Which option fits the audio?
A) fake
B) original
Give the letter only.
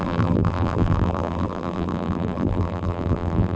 A